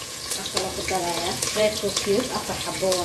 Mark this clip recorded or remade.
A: remade